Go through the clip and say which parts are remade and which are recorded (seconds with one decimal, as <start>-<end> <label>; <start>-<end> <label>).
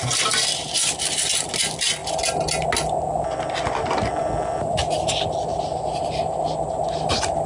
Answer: 0.0-7.5 recorded